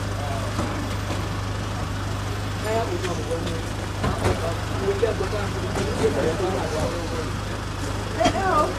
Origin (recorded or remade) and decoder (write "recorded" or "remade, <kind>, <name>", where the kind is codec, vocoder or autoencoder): recorded